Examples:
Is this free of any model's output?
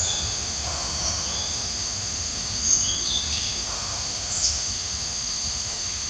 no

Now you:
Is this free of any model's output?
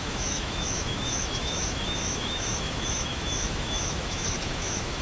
no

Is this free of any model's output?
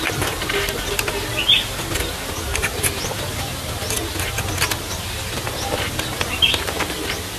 yes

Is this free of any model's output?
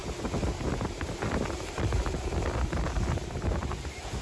yes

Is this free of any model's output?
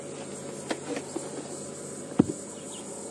yes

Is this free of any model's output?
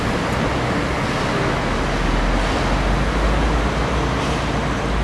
yes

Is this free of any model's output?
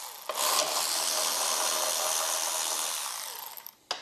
yes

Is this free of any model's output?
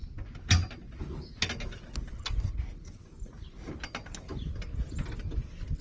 yes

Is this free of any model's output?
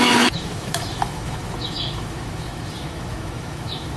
no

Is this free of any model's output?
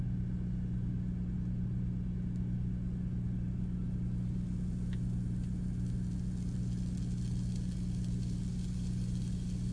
yes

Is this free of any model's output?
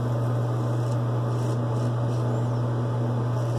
yes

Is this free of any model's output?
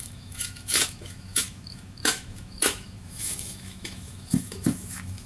no